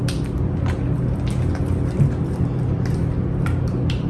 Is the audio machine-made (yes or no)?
no